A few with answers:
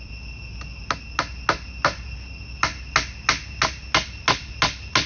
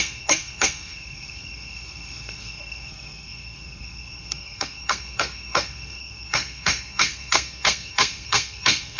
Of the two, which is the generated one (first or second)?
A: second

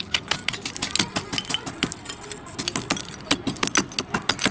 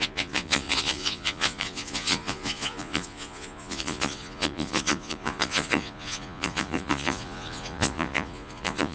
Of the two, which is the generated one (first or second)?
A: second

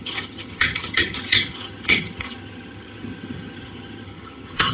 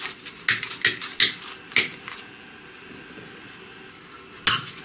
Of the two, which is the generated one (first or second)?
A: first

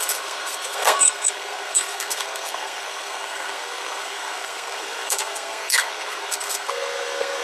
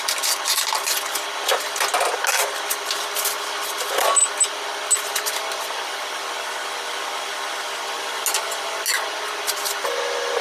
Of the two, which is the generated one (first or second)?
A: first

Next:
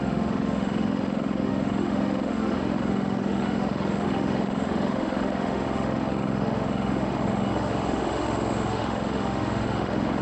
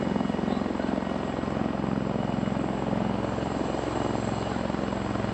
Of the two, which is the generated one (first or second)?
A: first